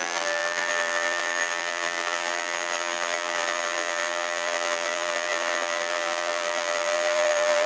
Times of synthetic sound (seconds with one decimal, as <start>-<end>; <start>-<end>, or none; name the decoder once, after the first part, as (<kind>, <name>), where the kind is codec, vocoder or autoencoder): 0.0-7.7 (vocoder, BigVGAN v2)